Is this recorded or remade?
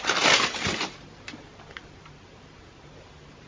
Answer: remade